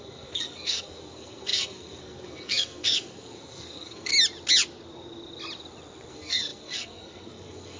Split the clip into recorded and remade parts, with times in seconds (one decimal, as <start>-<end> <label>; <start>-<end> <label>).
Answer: 0.0-4.1 remade; 4.1-6.1 recorded; 6.1-7.8 remade